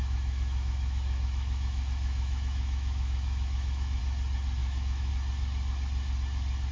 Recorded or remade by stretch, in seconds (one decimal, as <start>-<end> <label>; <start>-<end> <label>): 0.0-4.0 remade; 4.0-4.6 recorded; 4.6-5.1 remade; 5.1-6.7 recorded